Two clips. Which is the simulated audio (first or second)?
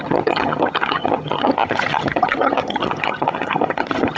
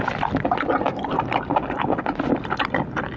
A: first